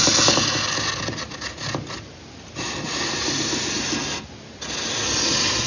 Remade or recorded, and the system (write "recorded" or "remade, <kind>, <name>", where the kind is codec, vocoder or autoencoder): recorded